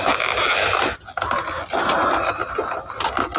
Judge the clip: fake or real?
real